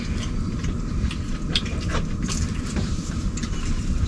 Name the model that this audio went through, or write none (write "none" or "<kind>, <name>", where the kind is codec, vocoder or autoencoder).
vocoder, BigVGAN v2